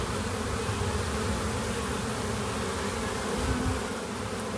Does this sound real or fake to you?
real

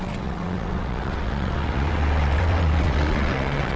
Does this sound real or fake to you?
fake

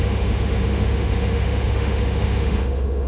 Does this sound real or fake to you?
fake